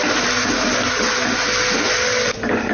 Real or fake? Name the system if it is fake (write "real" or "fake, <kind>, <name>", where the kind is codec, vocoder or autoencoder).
real